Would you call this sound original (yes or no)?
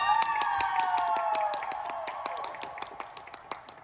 yes